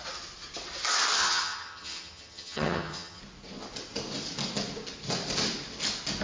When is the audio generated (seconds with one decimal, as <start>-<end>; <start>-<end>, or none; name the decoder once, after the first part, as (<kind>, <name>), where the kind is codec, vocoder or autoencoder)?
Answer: 1.2-3.2 (vocoder, HiFi-GAN)